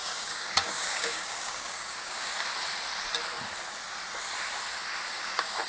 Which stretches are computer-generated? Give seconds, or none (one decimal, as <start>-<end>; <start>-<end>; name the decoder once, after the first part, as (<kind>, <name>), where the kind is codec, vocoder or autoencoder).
0.0-2.3 (codec, DAC); 5.1-5.7